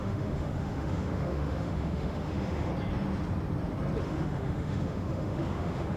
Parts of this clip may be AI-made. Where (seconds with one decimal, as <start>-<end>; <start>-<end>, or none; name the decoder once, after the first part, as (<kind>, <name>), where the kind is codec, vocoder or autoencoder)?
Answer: 0.0-2.7 (autoencoder, DAC-VAE); 4.0-6.0